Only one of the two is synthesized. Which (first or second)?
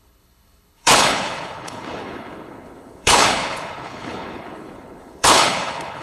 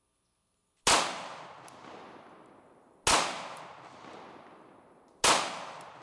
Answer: first